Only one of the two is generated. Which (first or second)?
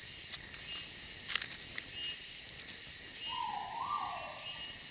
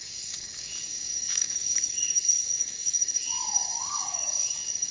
second